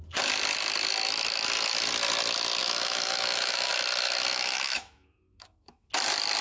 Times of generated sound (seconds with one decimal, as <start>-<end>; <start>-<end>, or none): 2.6-3.7; 4.3-5.9